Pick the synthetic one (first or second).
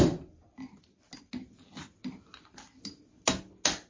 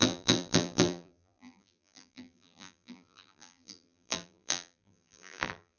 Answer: second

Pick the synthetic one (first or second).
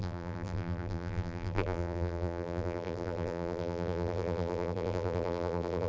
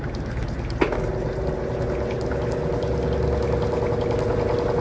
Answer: first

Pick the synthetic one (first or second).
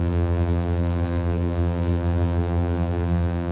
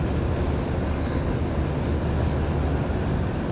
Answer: first